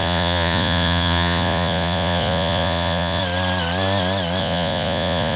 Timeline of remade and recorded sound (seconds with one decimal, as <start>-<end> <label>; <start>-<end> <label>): 0.0-3.2 remade; 3.2-4.4 recorded; 4.4-5.4 remade